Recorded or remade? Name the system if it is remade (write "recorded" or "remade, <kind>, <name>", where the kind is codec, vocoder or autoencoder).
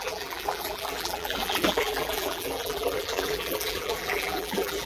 remade, vocoder, BigVGAN v2